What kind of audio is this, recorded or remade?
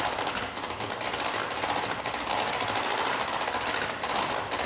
recorded